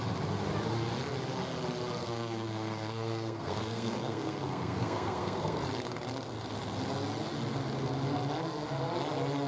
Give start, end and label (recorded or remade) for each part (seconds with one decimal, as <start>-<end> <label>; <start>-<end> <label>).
0.0-2.0 recorded; 2.0-5.6 remade; 5.6-9.5 recorded